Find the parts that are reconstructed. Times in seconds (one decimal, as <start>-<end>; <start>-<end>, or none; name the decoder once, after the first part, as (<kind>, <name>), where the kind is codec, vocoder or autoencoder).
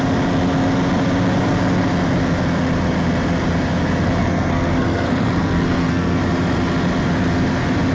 4.2-6.2 (codec, SNAC)